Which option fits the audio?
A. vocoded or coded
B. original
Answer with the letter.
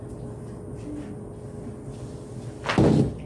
B